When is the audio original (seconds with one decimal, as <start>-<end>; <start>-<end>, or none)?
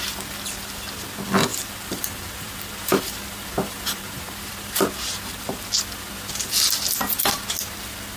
0.0-1.5; 4.5-8.2